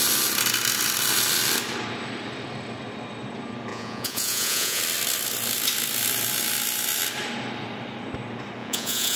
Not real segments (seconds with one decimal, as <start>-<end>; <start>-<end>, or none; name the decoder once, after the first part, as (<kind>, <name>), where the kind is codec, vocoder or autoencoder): 3.7-4.8 (vocoder, Vocos); 8.6-9.2